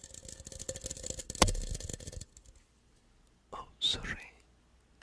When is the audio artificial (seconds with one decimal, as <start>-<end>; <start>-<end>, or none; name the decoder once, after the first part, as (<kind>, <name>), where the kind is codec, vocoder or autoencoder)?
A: none